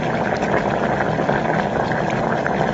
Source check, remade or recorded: recorded